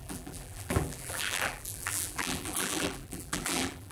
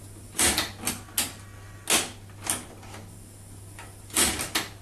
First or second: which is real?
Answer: second